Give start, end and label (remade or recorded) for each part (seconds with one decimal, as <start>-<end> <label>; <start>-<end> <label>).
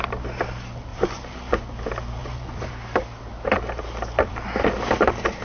0.0-0.9 recorded; 0.9-1.7 remade; 1.7-2.2 recorded; 2.2-2.7 remade; 2.7-5.4 recorded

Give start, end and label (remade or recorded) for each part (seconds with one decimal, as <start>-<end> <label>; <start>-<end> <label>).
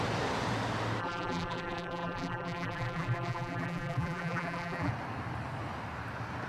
0.0-1.0 recorded; 1.0-4.9 remade; 4.9-6.5 recorded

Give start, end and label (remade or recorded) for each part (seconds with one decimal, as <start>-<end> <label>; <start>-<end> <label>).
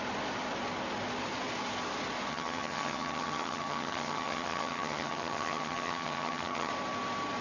0.0-2.3 recorded; 2.3-6.7 remade; 6.7-7.4 recorded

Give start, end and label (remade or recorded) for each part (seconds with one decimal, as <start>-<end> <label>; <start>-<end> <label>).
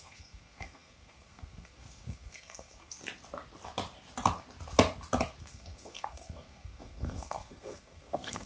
0.0-3.0 remade; 3.0-5.4 recorded; 5.4-8.5 remade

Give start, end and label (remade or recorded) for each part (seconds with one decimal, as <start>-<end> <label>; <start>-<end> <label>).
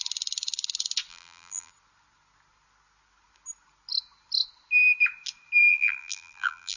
0.0-1.1 recorded; 1.1-1.7 remade; 1.7-5.7 recorded; 5.7-6.8 remade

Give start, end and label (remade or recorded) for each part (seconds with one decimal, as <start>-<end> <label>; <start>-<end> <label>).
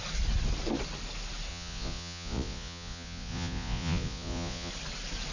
0.0-1.5 recorded; 1.5-4.7 remade; 4.7-5.3 recorded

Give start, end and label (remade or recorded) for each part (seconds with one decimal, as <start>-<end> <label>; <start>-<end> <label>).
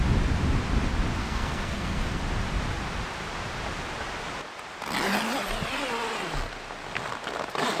0.0-1.2 recorded; 1.2-2.2 remade; 2.2-7.8 recorded